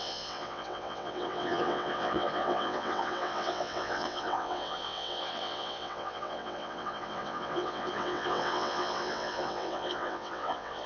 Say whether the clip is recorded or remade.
remade